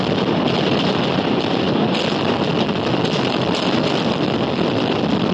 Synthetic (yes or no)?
no